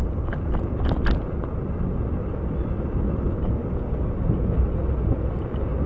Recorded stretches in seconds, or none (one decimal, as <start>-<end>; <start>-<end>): 0.0-5.9